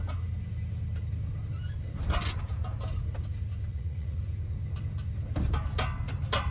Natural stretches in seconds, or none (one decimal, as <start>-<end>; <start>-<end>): 0.0-3.7; 4.2-6.5